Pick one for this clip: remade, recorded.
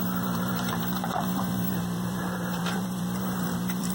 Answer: remade